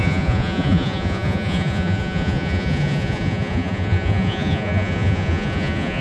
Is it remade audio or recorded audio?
remade